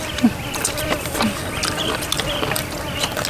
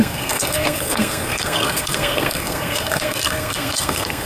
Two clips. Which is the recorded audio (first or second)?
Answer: first